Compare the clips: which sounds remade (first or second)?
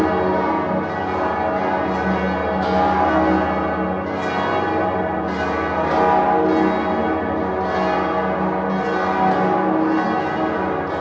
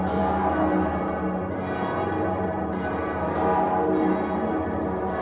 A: second